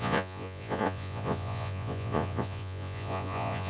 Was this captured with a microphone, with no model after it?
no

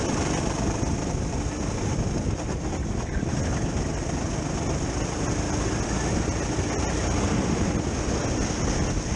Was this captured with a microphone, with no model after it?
yes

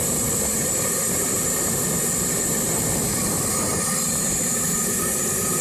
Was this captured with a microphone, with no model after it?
no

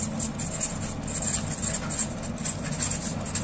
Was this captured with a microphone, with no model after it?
yes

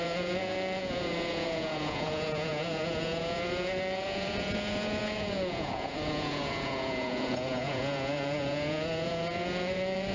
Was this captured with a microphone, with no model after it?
no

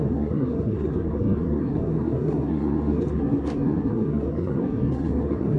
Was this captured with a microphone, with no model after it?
no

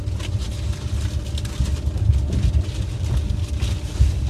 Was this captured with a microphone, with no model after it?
yes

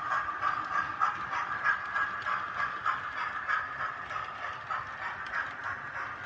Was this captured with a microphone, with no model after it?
yes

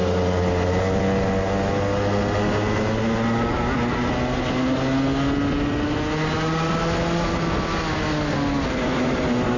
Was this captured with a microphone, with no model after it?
yes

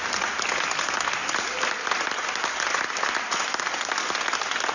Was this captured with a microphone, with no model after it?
yes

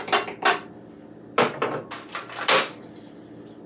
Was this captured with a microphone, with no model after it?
yes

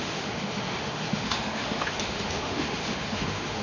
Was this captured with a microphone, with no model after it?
no